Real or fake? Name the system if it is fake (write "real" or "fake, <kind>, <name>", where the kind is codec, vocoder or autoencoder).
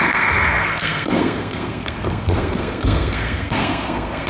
fake, codec, SNAC